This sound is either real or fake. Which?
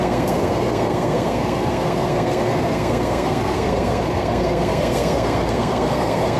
fake